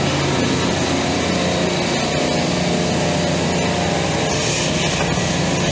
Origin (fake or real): real